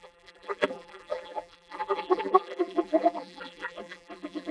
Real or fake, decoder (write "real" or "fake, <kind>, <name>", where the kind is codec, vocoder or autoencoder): fake, vocoder, BigVGAN v2